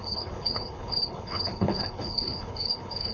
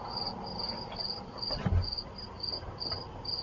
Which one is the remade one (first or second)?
first